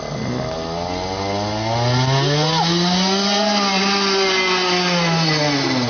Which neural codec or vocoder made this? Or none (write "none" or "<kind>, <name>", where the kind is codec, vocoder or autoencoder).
none